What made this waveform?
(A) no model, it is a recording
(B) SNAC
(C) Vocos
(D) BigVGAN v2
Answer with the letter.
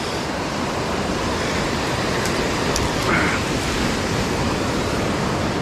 A